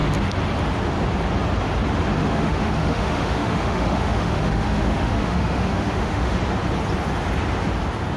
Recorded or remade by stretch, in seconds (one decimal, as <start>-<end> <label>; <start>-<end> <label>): 0.0-2.2 recorded; 2.2-6.4 remade; 6.4-8.2 recorded